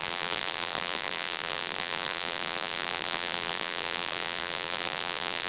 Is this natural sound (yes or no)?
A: no